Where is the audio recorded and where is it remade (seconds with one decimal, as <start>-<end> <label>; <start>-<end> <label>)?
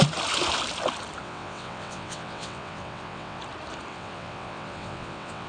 0.0-1.2 recorded; 1.2-3.4 remade; 3.4-3.9 recorded; 3.9-5.5 remade